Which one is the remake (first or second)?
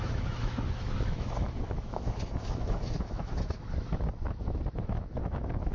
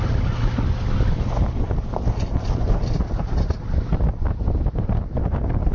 first